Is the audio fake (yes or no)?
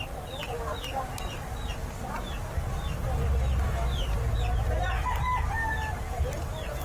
no